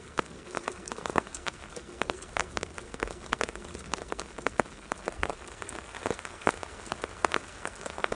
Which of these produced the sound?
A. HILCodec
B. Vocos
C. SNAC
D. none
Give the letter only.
C